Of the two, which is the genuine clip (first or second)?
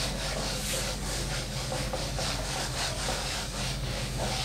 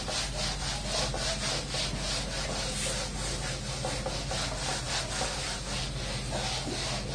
second